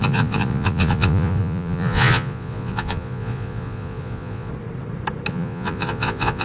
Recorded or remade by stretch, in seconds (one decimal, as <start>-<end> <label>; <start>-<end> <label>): 0.0-4.5 remade; 4.5-5.3 recorded; 5.3-6.4 remade